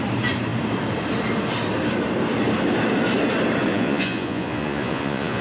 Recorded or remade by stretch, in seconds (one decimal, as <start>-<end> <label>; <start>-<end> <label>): 0.0-3.7 recorded; 3.7-5.4 remade